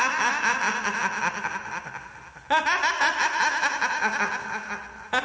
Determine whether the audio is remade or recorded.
recorded